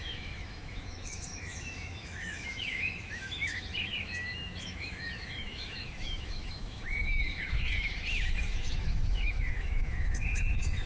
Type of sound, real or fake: fake